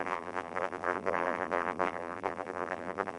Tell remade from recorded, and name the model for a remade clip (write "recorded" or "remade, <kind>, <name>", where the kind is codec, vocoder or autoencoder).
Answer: remade, vocoder, BigVGAN v2